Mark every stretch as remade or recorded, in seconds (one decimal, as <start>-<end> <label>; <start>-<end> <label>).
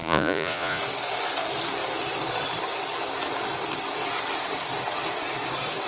0.0-0.8 remade; 0.8-5.9 recorded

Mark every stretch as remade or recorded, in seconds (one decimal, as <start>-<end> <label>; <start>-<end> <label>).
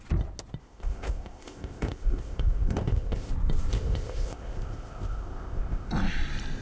0.0-0.6 recorded; 0.6-3.3 remade; 3.3-3.7 recorded; 3.7-5.9 remade; 5.9-6.6 recorded